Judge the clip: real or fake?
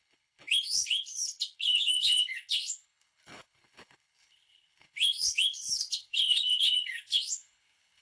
fake